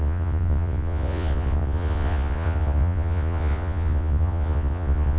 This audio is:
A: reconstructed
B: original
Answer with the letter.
A